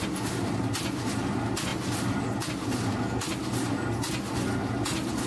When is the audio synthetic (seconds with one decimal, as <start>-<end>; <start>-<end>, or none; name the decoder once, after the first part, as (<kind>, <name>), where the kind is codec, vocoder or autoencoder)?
none